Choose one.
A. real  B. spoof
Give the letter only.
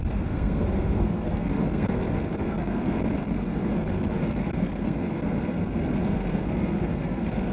B